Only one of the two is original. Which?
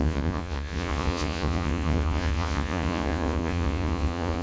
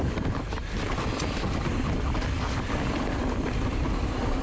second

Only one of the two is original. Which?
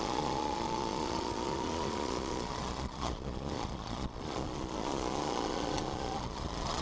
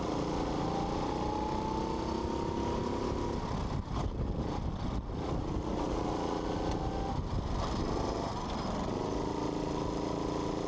second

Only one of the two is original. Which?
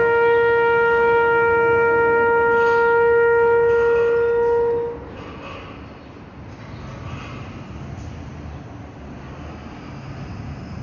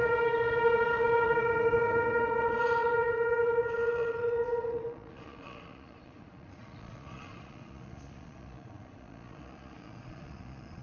first